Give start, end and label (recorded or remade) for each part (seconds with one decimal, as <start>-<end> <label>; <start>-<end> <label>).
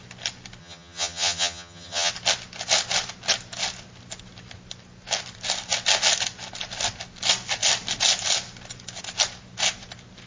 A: 0.0-0.6 recorded; 0.6-2.1 remade; 2.1-10.3 recorded